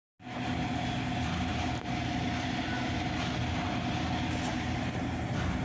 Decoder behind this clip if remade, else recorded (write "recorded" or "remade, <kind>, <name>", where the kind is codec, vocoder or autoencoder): recorded